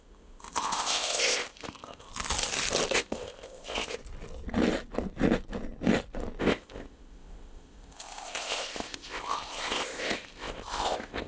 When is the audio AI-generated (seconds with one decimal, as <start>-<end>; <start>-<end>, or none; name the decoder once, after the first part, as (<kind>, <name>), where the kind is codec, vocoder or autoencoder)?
0.0-2.1 (codec, ZipCodec); 2.9-4.0; 6.4-11.3